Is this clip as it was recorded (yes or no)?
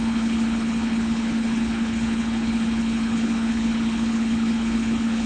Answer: no